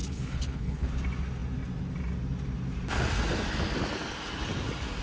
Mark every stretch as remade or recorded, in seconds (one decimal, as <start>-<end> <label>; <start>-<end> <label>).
0.0-0.9 remade; 0.9-5.0 recorded